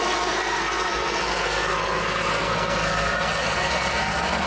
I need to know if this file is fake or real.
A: fake